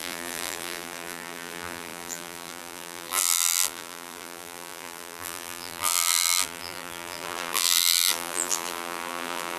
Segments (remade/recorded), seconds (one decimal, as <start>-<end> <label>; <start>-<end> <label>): 0.0-9.6 remade